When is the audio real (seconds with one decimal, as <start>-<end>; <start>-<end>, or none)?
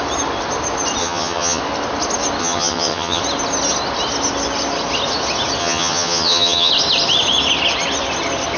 0.0-1.0; 1.6-2.4; 3.2-5.6; 6.7-8.6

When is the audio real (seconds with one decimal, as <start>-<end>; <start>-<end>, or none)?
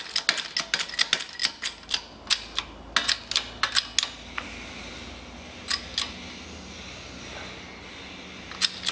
0.0-8.9